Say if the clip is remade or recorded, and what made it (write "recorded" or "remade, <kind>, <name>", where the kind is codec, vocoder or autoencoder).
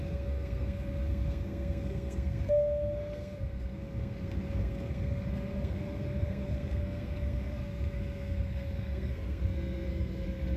remade, codec, SNAC